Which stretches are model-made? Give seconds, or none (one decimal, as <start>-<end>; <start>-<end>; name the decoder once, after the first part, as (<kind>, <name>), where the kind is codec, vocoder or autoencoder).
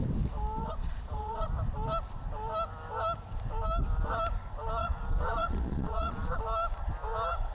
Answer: 0.6-1.5 (vocoder, Vocos); 4.8-6.4